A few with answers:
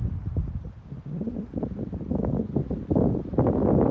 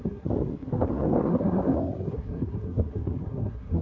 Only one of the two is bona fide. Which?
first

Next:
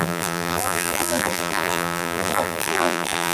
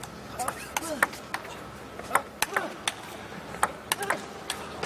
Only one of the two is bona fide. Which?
second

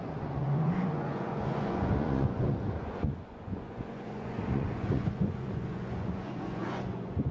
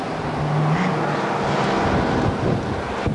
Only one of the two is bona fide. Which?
second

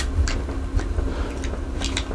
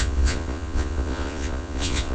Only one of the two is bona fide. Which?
first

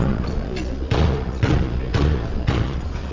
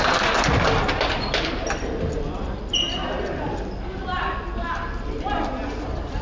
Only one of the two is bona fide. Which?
second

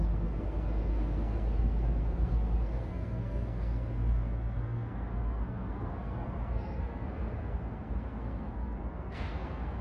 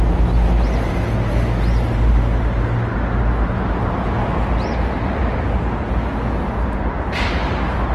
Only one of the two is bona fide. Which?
second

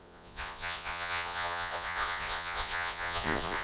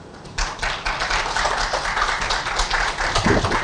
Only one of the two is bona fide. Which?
second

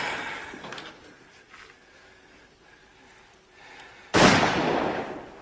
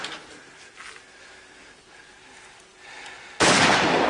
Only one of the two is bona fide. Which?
second